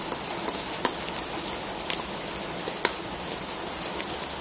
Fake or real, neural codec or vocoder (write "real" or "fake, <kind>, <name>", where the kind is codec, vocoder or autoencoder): real